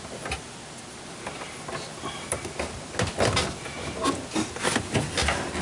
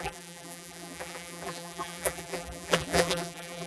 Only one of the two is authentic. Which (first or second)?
first